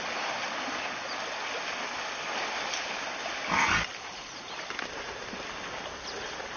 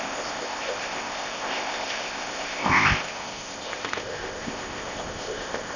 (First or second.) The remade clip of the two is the second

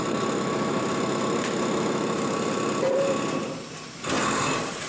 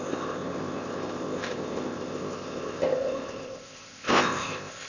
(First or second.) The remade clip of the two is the second